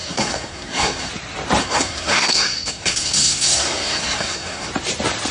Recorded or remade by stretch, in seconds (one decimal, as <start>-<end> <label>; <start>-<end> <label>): 0.0-1.1 remade; 1.1-1.6 recorded; 1.6-4.7 remade; 4.7-5.3 recorded